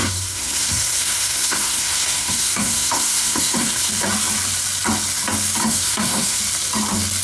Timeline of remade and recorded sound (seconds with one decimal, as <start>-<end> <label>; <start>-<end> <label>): 0.0-3.9 remade; 3.9-5.6 recorded; 5.6-6.4 remade; 6.4-7.2 recorded